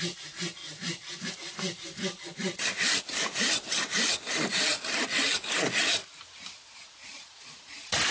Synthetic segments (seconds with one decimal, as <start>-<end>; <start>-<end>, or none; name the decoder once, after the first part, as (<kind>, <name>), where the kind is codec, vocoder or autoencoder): 7.0-8.1 (vocoder, Vocos)